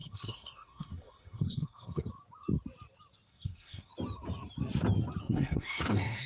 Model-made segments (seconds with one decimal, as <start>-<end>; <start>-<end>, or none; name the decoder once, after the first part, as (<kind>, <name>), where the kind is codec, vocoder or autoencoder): 0.0-2.1 (codec, SNAC); 3.3-3.9; 5.2-6.3